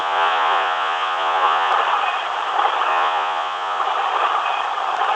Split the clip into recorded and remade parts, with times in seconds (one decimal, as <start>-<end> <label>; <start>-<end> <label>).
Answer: 0.0-1.7 remade; 1.7-2.9 recorded; 2.9-3.8 remade; 3.8-5.1 recorded